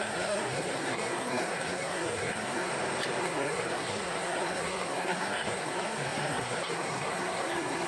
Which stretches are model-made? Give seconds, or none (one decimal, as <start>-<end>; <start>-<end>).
0.0-2.7; 3.2-7.9